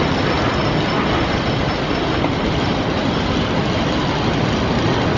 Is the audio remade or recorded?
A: recorded